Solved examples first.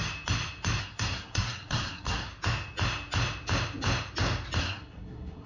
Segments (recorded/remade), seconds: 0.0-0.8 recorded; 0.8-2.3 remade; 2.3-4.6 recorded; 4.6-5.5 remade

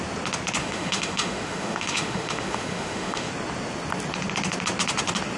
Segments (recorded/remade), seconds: 0.0-0.6 recorded; 0.6-3.3 remade; 3.3-5.4 recorded

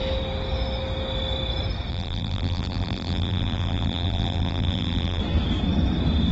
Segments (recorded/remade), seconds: 0.0-1.9 recorded; 1.9-5.2 remade; 5.2-6.3 recorded

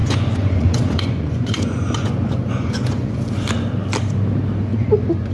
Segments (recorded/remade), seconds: 0.0-3.2 remade; 3.2-4.7 recorded; 4.7-5.3 remade

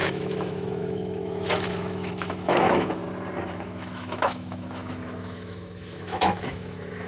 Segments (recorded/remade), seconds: 0.0-3.0 remade; 3.0-3.5 recorded; 3.5-7.1 remade

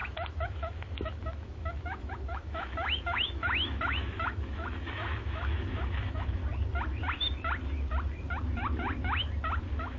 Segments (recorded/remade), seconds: 0.0-6.4 remade; 6.4-9.6 recorded; 9.6-10.0 remade

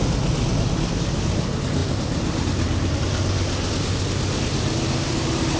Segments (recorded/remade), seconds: 0.0-5.6 recorded